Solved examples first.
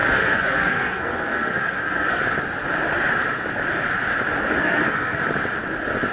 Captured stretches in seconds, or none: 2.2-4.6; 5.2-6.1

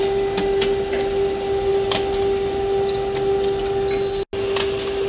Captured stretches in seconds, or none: 0.0-5.1

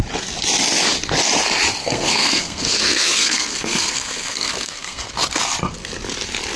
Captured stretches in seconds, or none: 0.0-1.8; 5.1-6.6

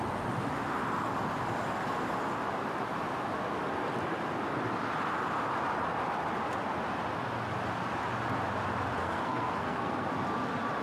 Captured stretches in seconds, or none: 0.0-9.0; 10.1-10.8

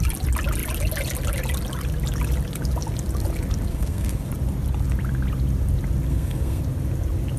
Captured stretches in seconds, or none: 0.0-3.7; 4.3-6.1; 6.6-7.4

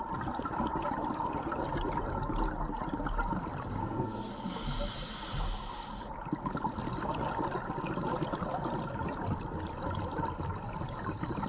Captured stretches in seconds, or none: 0.0-3.8; 4.3-11.5

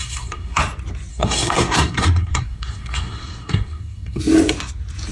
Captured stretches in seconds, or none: 0.6-1.1; 4.2-5.1